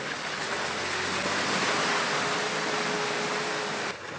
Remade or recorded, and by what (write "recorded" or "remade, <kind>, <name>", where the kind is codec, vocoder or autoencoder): recorded